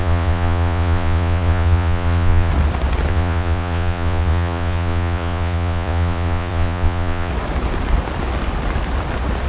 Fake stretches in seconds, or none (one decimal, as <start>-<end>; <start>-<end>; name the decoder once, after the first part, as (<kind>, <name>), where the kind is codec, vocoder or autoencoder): 0.0-2.5 (vocoder, Vocos); 3.1-7.3